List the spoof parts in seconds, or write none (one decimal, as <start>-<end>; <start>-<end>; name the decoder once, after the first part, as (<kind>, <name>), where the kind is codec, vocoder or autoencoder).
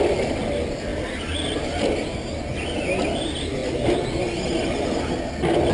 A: none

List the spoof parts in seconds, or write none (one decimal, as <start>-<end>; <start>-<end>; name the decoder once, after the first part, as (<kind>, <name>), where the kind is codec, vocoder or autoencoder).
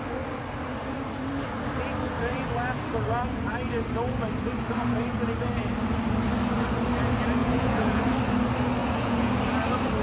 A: 7.4-8.0 (vocoder, Vocos); 8.8-9.3